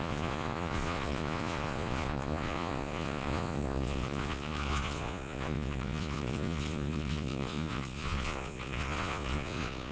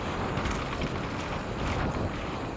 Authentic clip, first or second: second